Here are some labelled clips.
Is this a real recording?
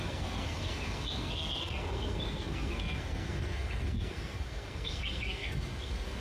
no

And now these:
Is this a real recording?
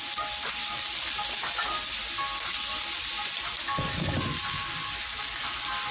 yes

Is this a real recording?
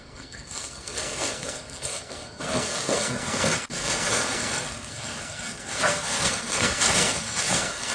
no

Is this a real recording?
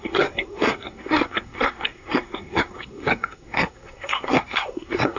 no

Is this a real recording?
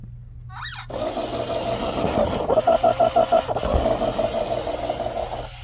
yes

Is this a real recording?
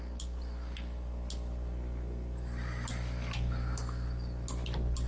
yes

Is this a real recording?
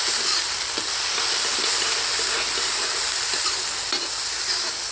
yes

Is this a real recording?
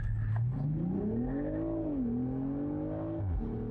yes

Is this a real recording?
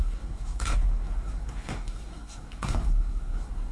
no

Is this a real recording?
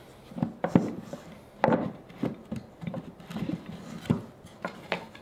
yes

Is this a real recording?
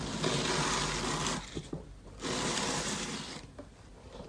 yes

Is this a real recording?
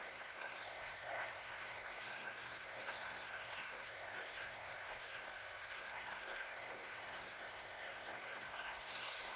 no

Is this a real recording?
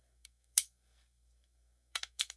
no